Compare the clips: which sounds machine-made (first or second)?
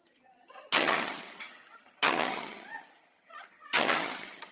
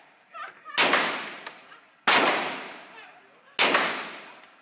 first